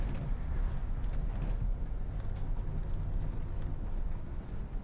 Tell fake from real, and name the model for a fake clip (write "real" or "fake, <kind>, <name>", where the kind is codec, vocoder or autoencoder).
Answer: real